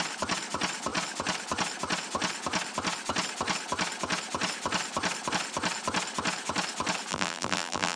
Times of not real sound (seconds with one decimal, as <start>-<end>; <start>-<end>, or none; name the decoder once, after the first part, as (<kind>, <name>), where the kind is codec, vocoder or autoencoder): 7.1-8.0 (vocoder, BigVGAN v2)